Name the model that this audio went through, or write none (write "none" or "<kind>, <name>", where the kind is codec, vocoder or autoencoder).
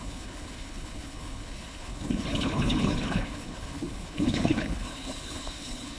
codec, HILCodec